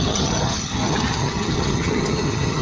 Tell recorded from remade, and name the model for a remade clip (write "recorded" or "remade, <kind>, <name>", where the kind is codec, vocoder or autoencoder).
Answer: remade, vocoder, HiFi-GAN